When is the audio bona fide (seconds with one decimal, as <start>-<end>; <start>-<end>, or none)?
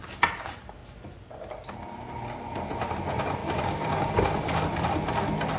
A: 0.0-3.4; 4.6-5.6